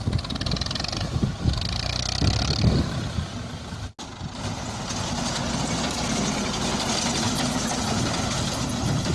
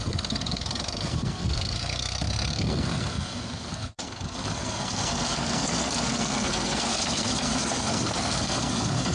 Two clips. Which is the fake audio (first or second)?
second